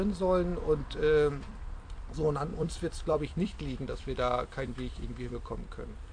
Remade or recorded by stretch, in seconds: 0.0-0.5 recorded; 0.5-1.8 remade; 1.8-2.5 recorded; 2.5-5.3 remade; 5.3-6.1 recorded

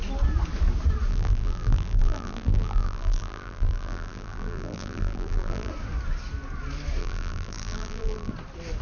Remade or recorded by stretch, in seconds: 0.0-1.1 recorded; 1.1-5.7 remade; 5.7-7.0 recorded; 7.0-8.3 remade; 8.3-8.8 recorded

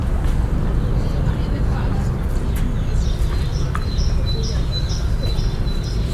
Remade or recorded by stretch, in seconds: 0.0-3.5 recorded; 3.5-4.3 remade; 4.3-6.1 recorded

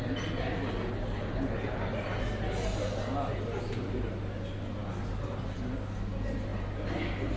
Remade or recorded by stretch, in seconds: 0.0-7.4 recorded

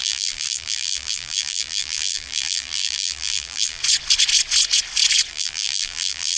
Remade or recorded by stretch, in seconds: 0.0-3.8 remade; 3.8-5.3 recorded; 5.3-6.4 remade